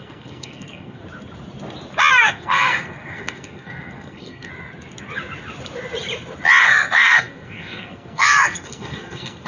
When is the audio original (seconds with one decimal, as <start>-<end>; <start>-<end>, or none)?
1.0-2.1; 4.5-6.6